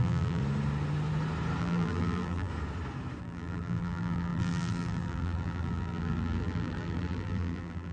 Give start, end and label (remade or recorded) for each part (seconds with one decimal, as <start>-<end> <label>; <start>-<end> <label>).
0.0-0.4 remade; 0.4-1.6 recorded; 1.6-2.5 remade; 2.5-3.2 recorded; 3.2-7.9 remade